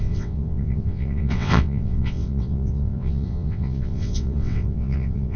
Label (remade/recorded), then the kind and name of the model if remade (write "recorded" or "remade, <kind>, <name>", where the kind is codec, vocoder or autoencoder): remade, vocoder, WaveNeXt